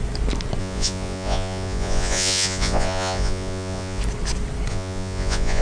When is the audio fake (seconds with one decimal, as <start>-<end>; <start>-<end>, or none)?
0.6-4.0; 4.7-5.6